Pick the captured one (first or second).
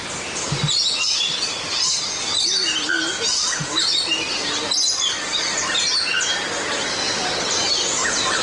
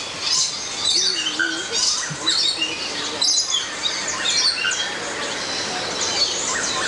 second